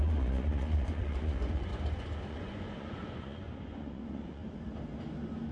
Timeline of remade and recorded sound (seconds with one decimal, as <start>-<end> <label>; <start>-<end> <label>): 0.0-1.7 remade; 1.7-2.2 recorded; 2.2-4.4 remade; 4.4-5.5 recorded